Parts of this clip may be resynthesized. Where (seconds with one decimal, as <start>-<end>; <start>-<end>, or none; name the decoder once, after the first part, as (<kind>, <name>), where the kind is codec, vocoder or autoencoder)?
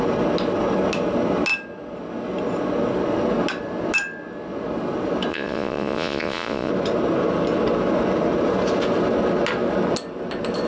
5.3-6.7 (vocoder, Vocos)